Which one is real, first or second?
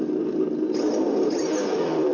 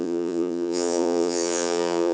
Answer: first